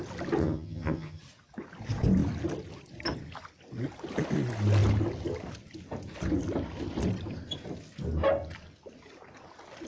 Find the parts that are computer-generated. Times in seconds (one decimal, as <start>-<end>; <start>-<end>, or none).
0.4-1.2